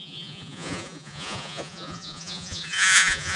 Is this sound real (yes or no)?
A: no